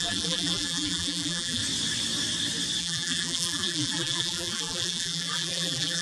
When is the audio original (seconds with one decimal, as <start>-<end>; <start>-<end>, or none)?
1.6-2.8